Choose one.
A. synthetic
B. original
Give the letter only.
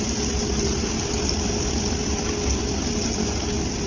B